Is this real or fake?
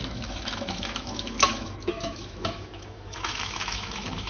fake